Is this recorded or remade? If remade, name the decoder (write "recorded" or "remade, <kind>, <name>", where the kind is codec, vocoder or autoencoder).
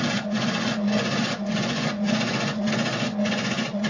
remade, vocoder, Vocos